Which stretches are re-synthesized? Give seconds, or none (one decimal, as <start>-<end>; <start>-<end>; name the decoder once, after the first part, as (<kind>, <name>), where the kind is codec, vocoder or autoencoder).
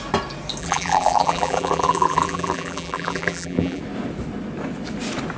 0.6-3.8 (vocoder, BigVGAN v2)